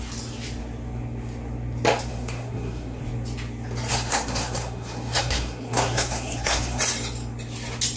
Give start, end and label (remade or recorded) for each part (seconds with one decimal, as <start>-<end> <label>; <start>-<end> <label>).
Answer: 0.0-2.1 recorded; 2.1-3.0 remade; 3.0-3.9 recorded; 3.9-6.8 remade; 6.8-8.0 recorded